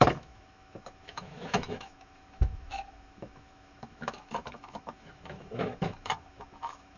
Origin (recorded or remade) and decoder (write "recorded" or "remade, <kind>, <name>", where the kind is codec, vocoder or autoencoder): remade, autoencoder, DAC-VAE